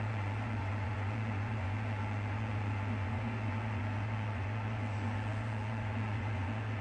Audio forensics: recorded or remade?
remade